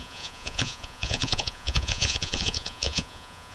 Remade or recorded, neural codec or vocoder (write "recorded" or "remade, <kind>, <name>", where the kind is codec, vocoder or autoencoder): remade, vocoder, Vocos